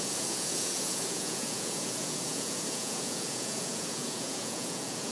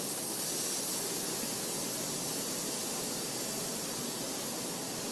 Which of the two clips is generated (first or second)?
first